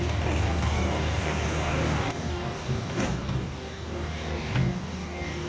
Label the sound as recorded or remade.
remade